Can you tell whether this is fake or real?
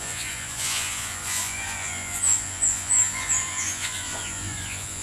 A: fake